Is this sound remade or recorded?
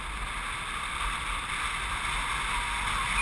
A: recorded